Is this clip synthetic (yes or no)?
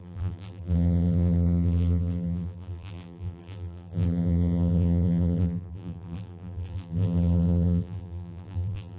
yes